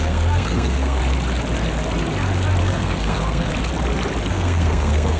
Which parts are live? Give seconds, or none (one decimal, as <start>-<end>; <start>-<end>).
1.0-2.6; 3.5-4.3